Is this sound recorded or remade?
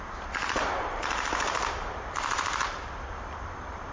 remade